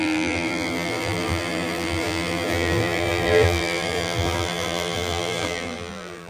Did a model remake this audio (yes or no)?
yes